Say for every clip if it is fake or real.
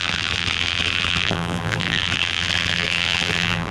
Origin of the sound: fake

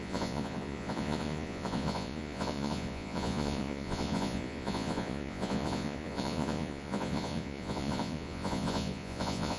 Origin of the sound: fake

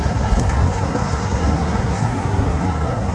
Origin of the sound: fake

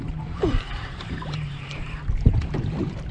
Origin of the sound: fake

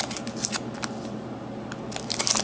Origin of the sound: real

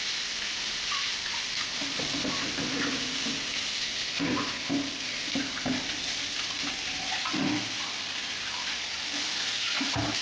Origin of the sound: real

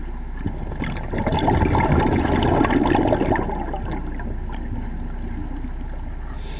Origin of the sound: real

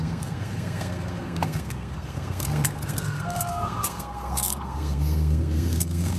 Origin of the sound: fake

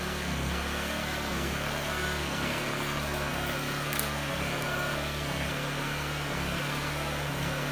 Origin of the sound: fake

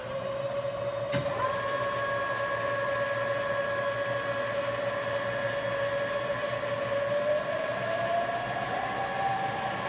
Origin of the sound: real